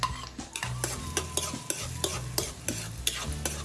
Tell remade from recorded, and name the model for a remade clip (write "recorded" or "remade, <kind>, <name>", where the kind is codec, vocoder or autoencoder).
recorded